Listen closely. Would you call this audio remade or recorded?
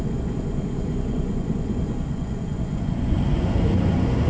remade